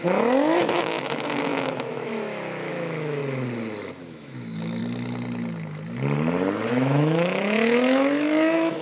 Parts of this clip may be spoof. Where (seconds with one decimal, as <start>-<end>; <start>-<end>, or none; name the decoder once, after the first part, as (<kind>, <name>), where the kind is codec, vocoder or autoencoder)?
0.0-3.2 (autoencoder, DAC-VAE); 4.0-4.8; 6.7-8.8